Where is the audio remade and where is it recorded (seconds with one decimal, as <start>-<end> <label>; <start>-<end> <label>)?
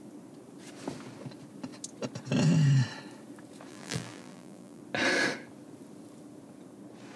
0.0-3.7 recorded; 3.7-4.8 remade; 4.8-7.2 recorded